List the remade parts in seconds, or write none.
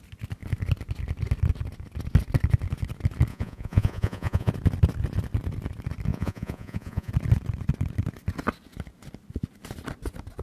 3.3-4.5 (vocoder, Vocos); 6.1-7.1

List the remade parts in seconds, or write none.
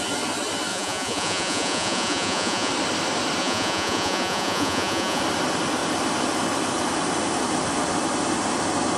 0.7-2.7 (vocoder, Vocos); 3.4-5.2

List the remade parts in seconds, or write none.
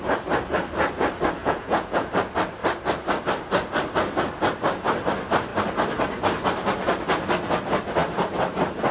1.4-2.1 (vocoder, Vocos)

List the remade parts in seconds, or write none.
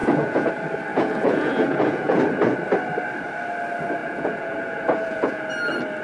0.0-0.5 (vocoder, Vocos); 0.9-2.2; 4.0-5.4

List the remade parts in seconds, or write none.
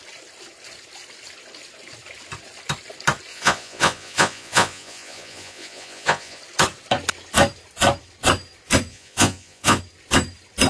3.3-6.4 (vocoder, Vocos); 8.9-9.8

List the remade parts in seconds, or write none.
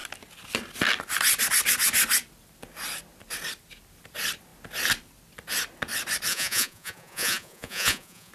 6.3-8.3 (vocoder, Vocos)